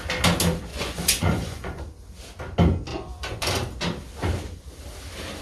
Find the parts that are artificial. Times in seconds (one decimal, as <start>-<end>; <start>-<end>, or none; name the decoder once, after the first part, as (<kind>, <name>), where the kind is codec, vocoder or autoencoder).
0.7-1.8 (vocoder, Vocos); 2.9-3.5